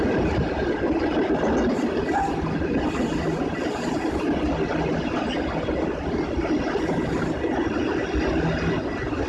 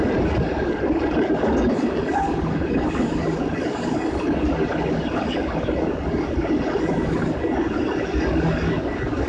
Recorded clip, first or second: first